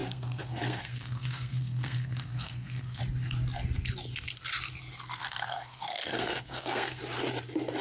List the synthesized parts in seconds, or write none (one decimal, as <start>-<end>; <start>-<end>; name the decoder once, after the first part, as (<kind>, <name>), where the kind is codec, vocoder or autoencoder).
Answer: 0.0-3.0 (codec, SNAC); 5.2-7.0